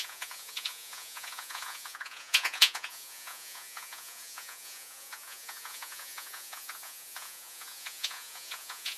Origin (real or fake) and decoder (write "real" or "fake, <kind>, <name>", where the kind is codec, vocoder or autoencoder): fake, vocoder, Vocos